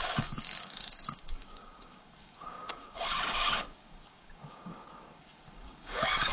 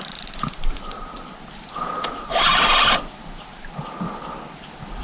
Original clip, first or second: second